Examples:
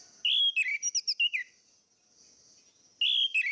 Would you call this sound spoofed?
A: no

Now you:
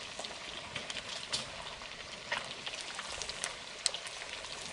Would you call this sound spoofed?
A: no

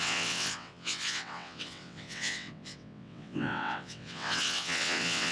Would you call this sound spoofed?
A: yes